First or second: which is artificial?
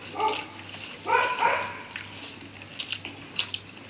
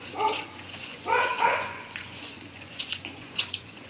second